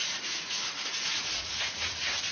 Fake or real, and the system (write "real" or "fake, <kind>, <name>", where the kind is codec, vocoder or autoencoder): fake, vocoder, Vocos